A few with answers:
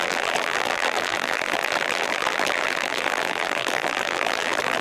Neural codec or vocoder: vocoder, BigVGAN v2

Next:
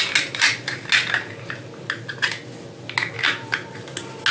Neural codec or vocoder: none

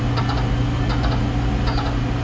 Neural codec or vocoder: none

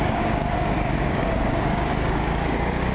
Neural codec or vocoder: codec, DAC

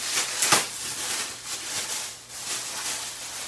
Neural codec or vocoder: none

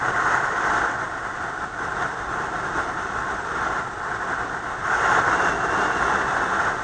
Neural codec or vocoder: none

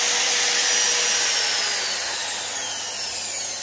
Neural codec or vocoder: none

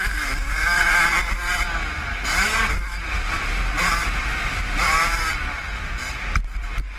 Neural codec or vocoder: vocoder, BigVGAN v2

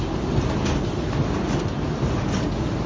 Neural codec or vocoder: none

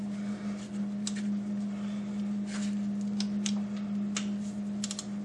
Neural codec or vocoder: none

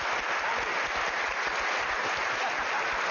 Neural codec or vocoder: none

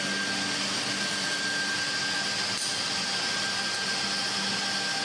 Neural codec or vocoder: none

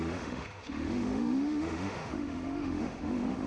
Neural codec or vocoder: autoencoder, DAC-VAE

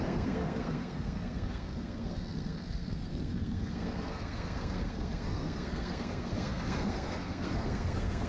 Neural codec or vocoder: codec, SNAC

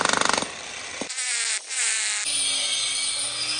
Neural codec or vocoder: none